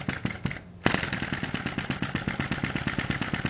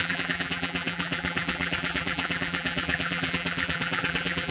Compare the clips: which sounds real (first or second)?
first